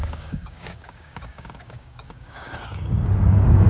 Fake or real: fake